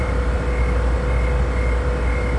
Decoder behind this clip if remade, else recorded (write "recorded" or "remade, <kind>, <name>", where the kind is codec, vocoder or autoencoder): recorded